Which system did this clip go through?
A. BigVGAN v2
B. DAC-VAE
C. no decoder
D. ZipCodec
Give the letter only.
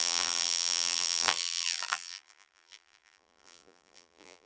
A